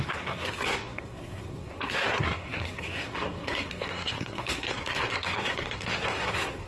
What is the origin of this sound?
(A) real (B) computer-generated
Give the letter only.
B